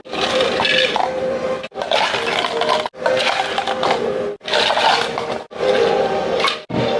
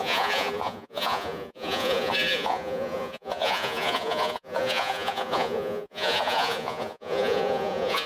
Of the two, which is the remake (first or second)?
second